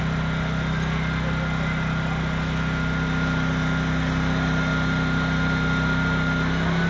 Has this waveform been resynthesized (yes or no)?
no